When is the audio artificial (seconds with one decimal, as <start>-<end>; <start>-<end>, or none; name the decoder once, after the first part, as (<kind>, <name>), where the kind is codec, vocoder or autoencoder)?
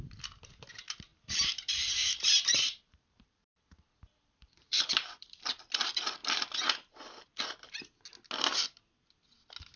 1.1-5.4 (vocoder, BigVGAN v2)